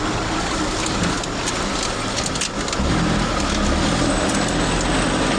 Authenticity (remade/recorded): recorded